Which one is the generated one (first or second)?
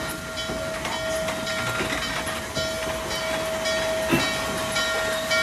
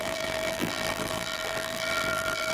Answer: second